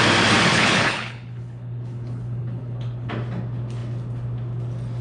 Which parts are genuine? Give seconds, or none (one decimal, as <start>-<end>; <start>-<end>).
0.0-0.5; 3.1-5.0